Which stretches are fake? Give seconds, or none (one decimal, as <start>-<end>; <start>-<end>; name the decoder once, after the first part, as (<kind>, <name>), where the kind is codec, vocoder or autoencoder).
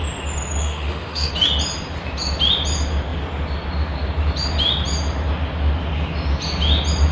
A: 0.6-1.3 (autoencoder, DAC-VAE)